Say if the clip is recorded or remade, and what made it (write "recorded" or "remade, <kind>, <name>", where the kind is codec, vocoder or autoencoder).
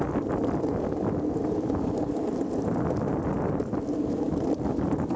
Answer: recorded